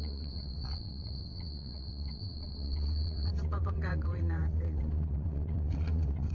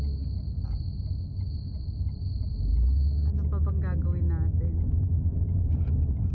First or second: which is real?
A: second